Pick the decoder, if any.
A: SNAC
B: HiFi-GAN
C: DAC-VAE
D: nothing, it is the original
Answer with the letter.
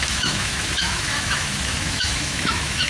C